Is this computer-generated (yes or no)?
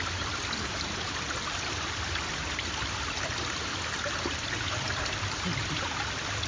yes